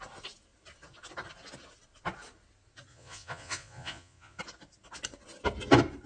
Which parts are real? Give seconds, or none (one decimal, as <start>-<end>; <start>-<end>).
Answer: 0.0-2.9; 4.4-6.1